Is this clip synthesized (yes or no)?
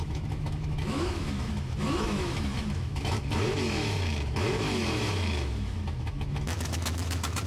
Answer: yes